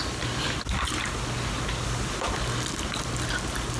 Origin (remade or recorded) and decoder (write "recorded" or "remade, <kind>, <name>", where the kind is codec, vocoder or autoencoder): recorded